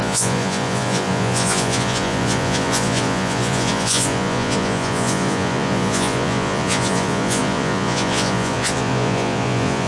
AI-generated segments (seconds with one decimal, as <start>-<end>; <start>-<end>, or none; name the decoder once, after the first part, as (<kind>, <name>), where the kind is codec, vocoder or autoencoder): 0.0-9.9 (vocoder, Vocos)